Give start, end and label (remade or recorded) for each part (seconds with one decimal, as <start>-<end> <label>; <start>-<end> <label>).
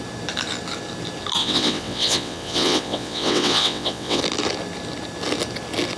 0.0-1.4 recorded; 1.4-4.2 remade; 4.2-6.0 recorded